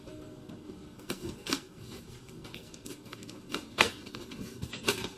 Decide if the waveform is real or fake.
fake